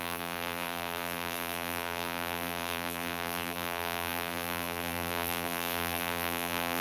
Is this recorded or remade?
remade